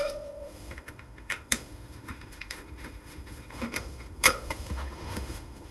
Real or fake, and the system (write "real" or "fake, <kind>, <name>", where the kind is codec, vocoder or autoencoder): fake, autoencoder, DAC-VAE